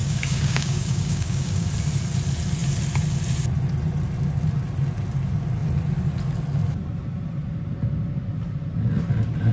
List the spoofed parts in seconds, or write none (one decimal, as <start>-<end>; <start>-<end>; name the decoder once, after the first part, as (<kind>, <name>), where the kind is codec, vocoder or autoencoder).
0.0-1.7 (codec, DAC)